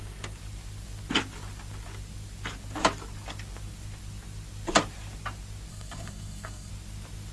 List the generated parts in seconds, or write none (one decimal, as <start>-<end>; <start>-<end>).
5.7-6.7